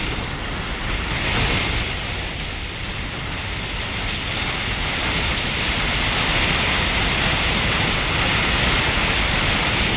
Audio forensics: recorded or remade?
recorded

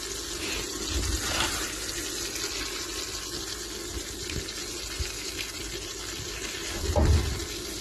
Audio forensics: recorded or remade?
recorded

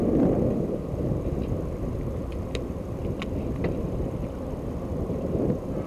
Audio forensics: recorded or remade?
recorded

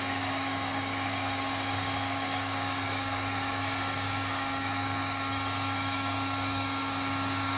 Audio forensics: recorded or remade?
remade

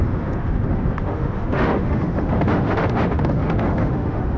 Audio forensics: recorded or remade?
remade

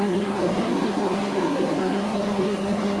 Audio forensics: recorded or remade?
remade